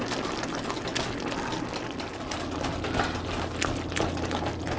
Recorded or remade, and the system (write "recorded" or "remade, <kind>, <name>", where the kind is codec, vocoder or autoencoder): recorded